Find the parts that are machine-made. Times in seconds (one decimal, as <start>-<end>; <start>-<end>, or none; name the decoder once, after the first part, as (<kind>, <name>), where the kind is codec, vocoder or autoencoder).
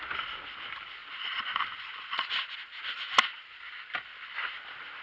none